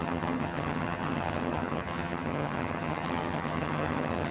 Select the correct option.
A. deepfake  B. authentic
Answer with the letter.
A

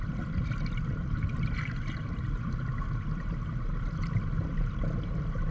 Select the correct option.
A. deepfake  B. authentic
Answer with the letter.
B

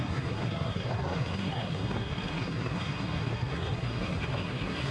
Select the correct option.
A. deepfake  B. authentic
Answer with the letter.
A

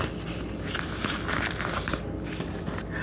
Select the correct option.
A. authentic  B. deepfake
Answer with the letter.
A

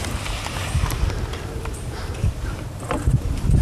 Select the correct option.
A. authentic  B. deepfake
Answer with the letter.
B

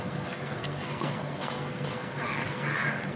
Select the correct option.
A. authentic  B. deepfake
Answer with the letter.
B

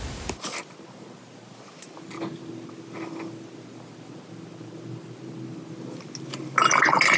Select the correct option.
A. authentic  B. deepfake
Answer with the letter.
A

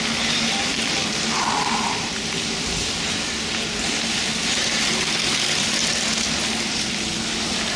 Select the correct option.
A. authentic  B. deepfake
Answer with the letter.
A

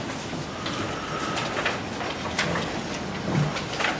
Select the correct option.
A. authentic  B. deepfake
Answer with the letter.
A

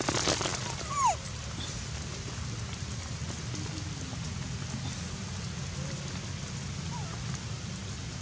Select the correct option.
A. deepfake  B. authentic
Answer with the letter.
B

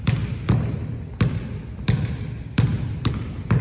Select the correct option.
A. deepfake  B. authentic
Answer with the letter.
B